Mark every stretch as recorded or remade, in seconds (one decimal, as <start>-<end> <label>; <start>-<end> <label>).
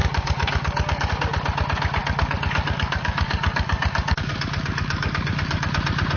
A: 0.0-1.1 remade; 1.1-2.0 recorded; 2.0-5.7 remade; 5.7-6.2 recorded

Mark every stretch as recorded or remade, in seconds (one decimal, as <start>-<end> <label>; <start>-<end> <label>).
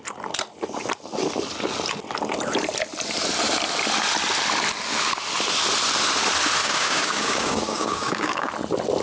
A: 0.0-6.6 recorded; 6.6-8.5 remade; 8.5-9.0 recorded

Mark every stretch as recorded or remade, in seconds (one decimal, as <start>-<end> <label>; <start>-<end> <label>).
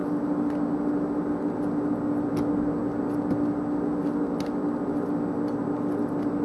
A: 0.0-6.4 recorded